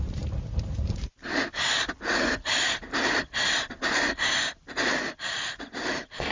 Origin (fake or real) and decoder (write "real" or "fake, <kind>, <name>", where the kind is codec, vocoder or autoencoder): real